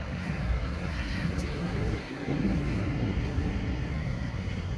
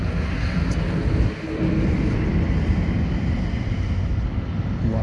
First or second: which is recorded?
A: second